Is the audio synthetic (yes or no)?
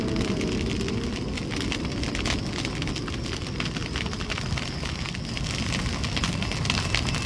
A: no